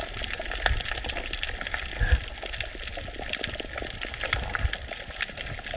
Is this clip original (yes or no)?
yes